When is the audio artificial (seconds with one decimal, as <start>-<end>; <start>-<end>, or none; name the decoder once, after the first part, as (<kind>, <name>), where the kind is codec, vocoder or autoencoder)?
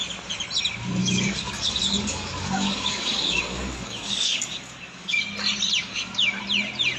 1.0-5.2 (codec, DAC); 5.8-6.4